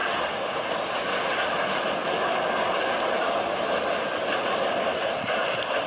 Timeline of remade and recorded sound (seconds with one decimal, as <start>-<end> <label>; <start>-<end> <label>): 0.0-5.9 recorded